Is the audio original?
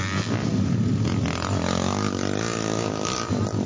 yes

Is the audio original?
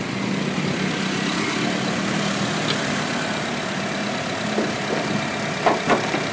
yes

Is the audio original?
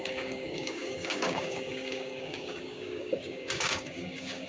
no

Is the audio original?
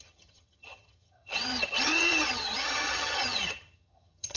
no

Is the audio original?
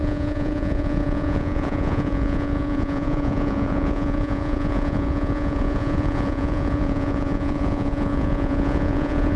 no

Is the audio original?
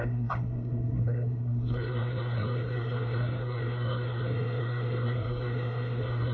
no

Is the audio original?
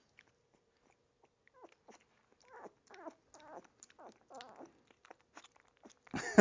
yes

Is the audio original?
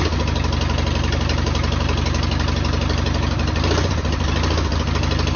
yes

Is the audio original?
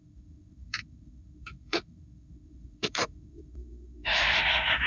no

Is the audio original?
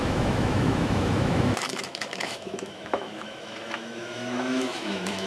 no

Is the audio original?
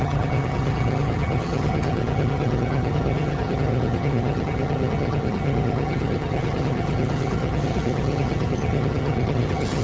no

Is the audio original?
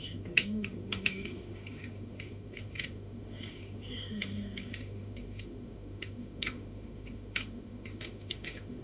no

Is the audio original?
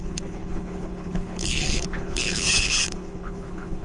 no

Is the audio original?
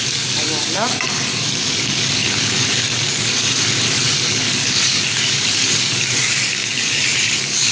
no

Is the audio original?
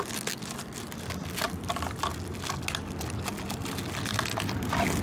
yes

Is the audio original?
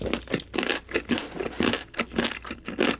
yes